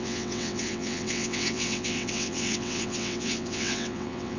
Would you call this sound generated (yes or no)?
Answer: yes